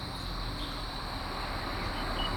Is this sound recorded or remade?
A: recorded